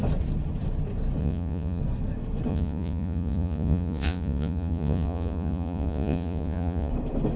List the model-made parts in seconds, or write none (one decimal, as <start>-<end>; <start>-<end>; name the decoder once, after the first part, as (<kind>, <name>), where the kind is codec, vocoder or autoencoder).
1.2-1.8 (vocoder, Vocos); 2.5-6.9